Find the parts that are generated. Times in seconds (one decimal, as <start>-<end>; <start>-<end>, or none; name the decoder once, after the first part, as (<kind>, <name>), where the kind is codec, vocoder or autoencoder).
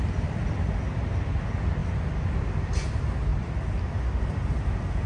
none